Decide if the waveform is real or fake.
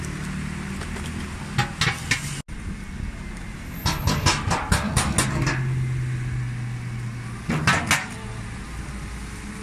real